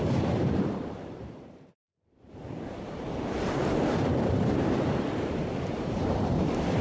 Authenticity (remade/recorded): remade